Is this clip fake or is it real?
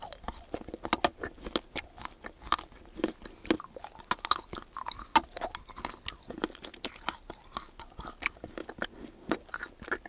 real